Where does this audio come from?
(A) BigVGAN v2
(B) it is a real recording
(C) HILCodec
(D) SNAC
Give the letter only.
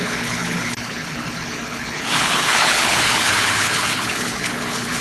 C